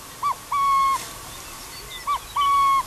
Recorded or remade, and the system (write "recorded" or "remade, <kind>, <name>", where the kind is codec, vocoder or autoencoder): recorded